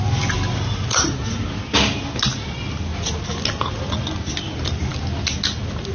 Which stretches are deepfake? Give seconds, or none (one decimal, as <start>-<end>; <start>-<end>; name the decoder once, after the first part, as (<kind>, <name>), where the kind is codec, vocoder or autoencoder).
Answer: none